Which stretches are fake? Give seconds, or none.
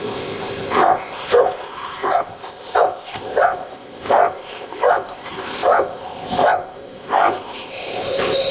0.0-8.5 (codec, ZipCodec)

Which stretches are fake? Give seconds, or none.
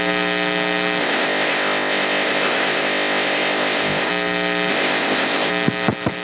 1.0-4.1 (codec, ZipCodec); 4.7-5.5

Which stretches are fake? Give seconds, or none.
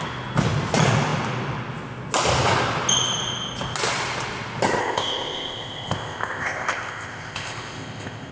4.8-8.3 (codec, ZipCodec)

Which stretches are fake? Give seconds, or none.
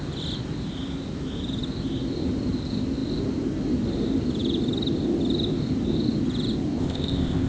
6.8-7.5 (codec, ZipCodec)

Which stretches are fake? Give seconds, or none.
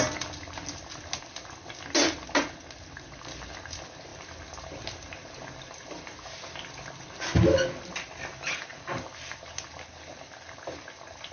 none